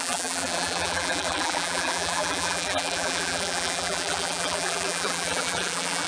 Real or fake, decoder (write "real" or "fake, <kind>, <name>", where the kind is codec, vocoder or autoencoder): fake, vocoder, BigVGAN v2